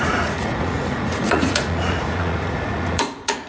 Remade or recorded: remade